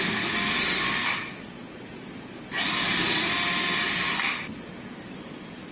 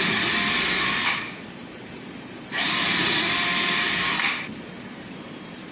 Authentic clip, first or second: first